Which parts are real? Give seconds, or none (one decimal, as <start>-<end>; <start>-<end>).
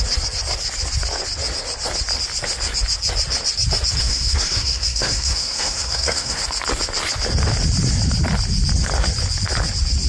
0.0-4.0; 6.4-10.1